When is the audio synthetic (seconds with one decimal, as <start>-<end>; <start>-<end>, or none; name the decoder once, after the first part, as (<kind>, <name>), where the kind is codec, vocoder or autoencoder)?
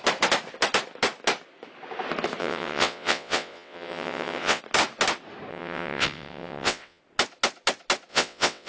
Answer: 2.4-4.6 (vocoder, WaveNeXt); 5.5-7.0; 8.1-8.7